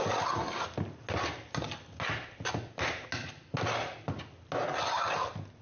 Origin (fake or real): real